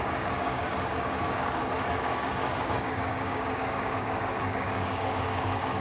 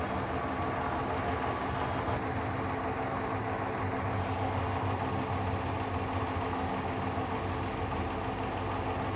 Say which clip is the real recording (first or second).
second